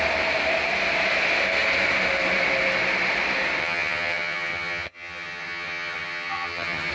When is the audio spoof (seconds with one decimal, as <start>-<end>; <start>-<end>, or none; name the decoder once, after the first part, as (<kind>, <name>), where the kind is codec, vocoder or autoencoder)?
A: 3.6-6.9 (vocoder, HiFi-GAN)